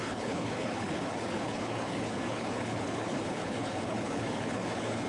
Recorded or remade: remade